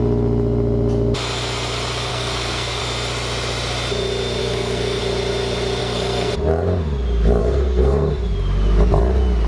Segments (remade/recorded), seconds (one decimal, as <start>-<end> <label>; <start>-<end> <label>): 0.0-2.1 recorded; 2.1-2.8 remade; 2.8-4.4 recorded; 4.4-5.0 remade; 5.0-5.8 recorded; 5.8-6.3 remade; 6.3-7.4 recorded; 7.4-8.1 remade; 8.1-9.5 recorded